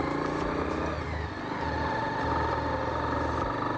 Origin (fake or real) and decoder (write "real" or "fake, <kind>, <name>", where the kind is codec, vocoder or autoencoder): real